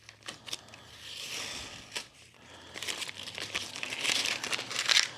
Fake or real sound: real